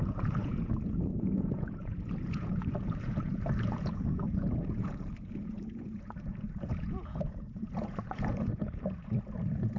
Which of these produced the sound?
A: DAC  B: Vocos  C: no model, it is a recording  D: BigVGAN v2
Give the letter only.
B